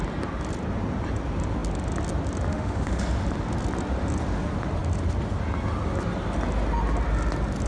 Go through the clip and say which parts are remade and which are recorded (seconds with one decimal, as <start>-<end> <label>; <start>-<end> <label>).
0.0-2.5 recorded; 2.5-3.0 remade; 3.0-7.7 recorded